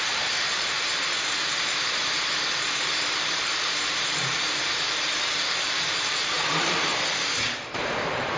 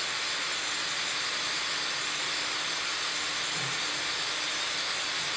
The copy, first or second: first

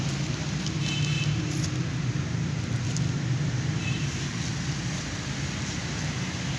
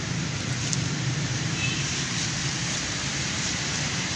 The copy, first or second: second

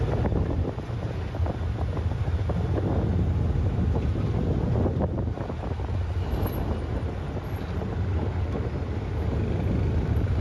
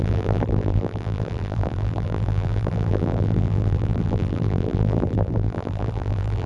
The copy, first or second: second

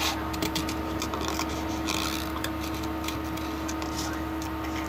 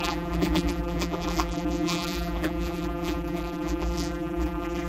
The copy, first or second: second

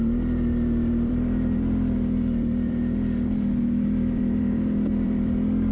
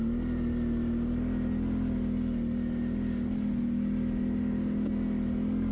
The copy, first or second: first